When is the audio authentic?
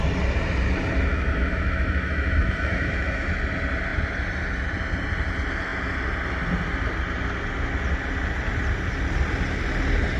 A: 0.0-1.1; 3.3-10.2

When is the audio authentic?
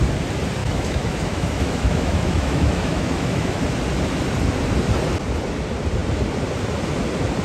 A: 0.0-0.6; 3.6-7.4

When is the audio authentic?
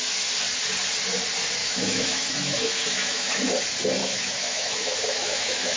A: 0.0-1.6; 3.5-4.0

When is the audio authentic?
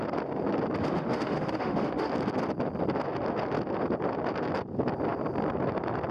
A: 0.0-0.8; 2.1-6.1